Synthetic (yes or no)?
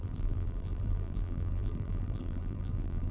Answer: yes